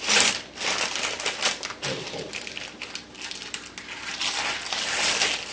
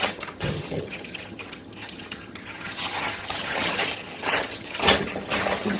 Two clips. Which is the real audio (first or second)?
first